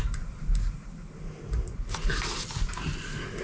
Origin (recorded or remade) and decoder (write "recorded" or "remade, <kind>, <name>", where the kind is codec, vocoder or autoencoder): recorded